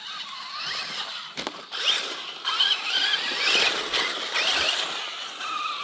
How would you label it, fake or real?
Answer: real